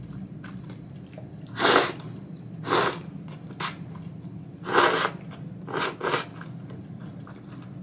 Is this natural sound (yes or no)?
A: yes